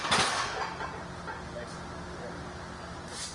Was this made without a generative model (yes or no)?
no